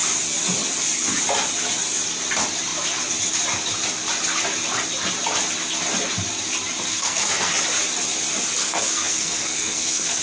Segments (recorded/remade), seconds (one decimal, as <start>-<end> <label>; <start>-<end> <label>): 0.0-6.9 recorded; 6.9-7.5 remade; 7.5-8.6 recorded; 8.6-10.2 remade